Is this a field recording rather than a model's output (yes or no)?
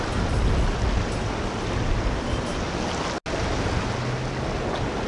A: yes